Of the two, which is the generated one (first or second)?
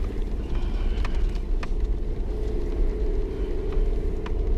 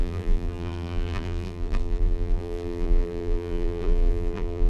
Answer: second